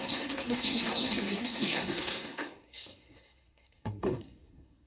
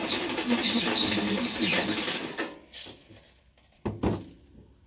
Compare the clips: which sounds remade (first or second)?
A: first